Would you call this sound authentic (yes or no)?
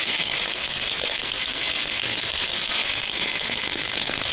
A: no